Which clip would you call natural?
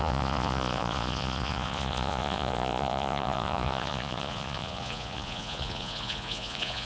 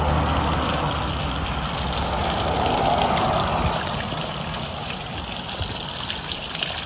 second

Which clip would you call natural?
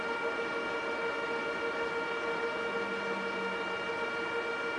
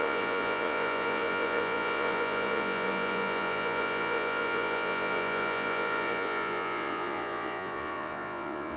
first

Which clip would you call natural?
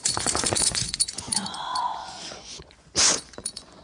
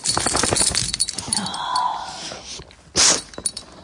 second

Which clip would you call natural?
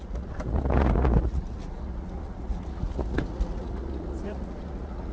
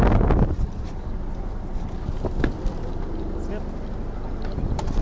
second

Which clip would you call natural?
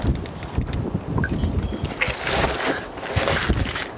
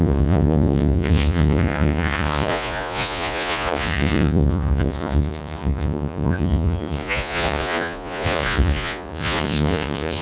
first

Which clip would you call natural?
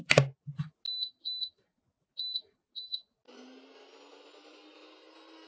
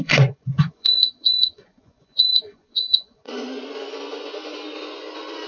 first